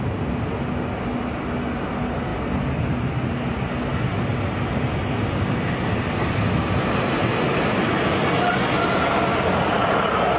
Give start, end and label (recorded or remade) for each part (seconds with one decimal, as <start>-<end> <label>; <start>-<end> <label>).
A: 0.0-10.4 recorded